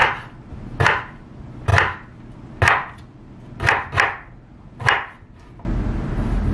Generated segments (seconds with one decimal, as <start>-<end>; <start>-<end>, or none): none